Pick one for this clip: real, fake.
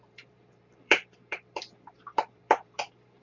fake